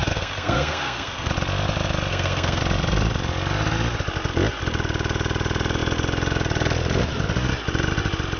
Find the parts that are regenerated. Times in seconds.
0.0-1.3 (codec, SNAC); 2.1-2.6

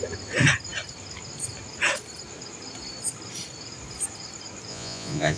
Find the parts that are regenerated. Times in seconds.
4.7-5.4 (vocoder, Vocos)

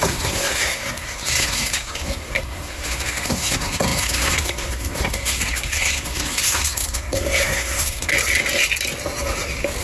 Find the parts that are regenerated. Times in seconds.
0.0-8.1 (codec, SNAC)

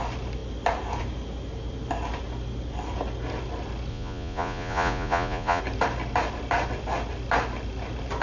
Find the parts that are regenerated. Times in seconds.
3.9-5.6 (vocoder, Vocos)